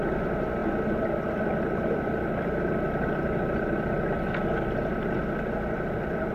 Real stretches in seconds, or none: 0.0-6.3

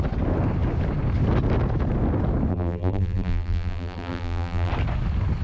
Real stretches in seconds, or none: 0.0-2.5; 4.7-5.4

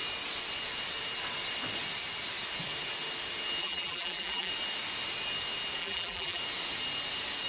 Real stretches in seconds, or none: 0.0-3.6; 4.5-5.8; 6.4-7.5

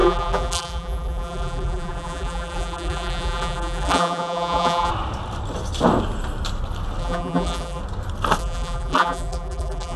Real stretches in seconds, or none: 4.9-7.0; 7.8-8.4

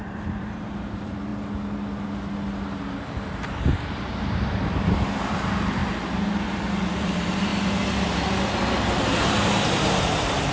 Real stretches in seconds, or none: 1.3-3.6; 5.8-7.0; 7.5-9.2

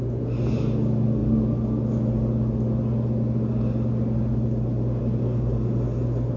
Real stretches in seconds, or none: 0.0-6.4

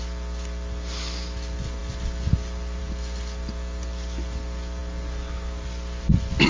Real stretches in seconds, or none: 0.0-6.5

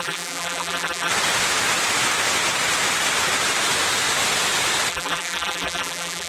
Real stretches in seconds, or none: 1.1-4.9